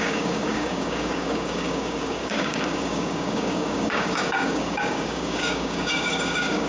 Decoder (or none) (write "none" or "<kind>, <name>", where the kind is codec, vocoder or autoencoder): codec, DAC